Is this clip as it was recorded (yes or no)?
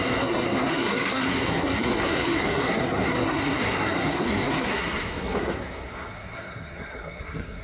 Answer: no